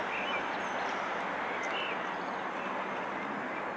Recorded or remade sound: recorded